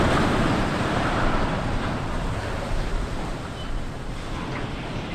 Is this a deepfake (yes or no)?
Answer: yes